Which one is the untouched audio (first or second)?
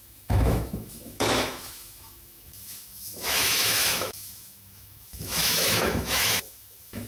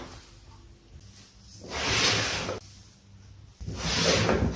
second